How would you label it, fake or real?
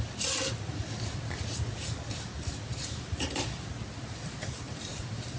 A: real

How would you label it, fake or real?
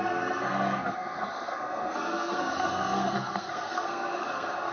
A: fake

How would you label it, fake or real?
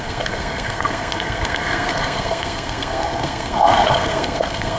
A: fake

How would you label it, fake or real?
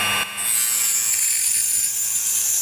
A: real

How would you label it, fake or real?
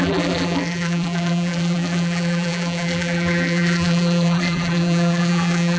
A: fake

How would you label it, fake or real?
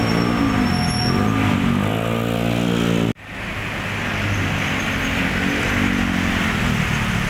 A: real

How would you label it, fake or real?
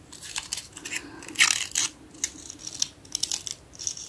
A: real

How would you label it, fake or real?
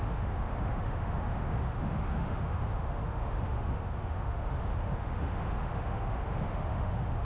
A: fake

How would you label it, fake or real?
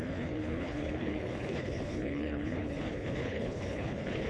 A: fake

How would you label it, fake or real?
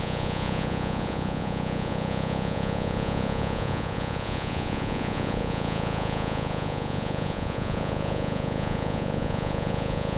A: fake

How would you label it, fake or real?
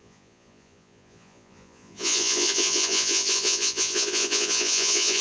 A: fake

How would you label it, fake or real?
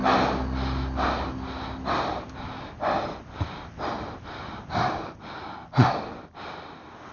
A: real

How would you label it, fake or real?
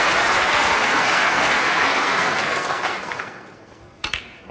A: fake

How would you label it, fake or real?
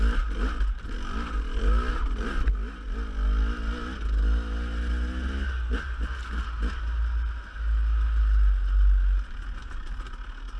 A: real